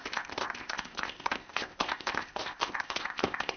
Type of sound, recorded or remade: remade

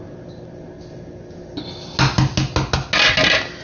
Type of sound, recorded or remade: recorded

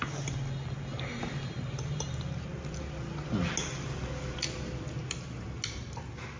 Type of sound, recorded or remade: recorded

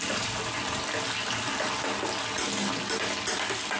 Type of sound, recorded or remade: recorded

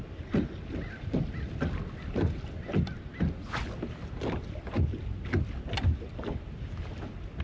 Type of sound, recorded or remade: recorded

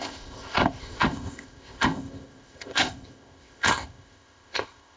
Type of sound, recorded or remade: remade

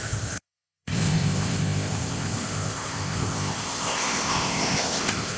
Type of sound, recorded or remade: remade